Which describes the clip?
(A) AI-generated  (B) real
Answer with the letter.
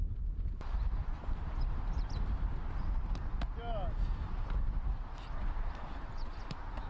B